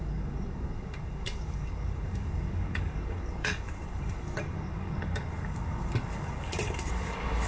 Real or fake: fake